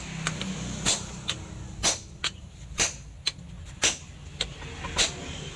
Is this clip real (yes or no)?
yes